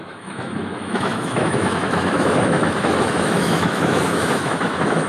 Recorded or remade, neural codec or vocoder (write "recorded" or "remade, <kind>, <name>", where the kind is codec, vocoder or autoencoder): remade, autoencoder, DAC-VAE